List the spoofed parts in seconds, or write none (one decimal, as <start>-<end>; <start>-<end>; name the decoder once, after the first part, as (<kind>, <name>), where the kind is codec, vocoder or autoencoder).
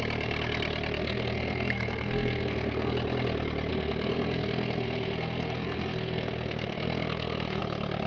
1.0-2.9 (codec, SNAC); 3.7-7.6